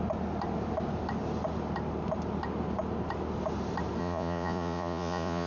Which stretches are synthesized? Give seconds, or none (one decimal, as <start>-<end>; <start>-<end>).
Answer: 4.0-5.5